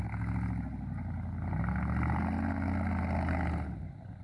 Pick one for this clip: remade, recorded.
recorded